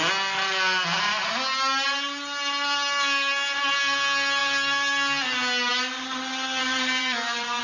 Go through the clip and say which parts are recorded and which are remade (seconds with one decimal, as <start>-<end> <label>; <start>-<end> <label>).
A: 0.0-6.6 recorded; 6.6-7.6 remade